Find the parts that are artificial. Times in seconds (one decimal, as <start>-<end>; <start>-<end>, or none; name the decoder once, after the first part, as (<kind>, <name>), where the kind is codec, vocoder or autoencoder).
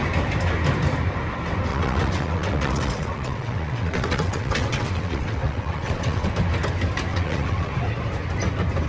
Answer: 1.7-6.3 (vocoder, WaveNeXt); 7.1-7.7